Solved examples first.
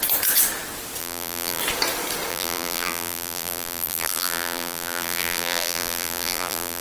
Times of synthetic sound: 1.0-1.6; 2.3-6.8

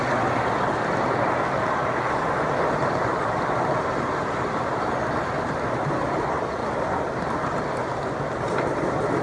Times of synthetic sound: none